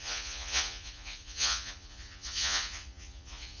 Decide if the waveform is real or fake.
fake